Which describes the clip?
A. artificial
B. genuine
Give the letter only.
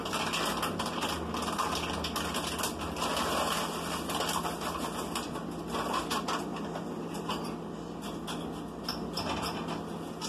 B